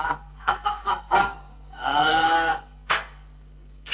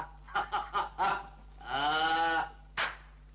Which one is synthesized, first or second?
first